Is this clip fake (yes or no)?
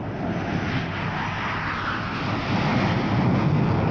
no